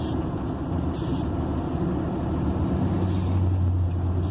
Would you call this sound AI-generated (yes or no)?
no